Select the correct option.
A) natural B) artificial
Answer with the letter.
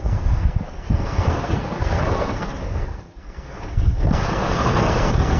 B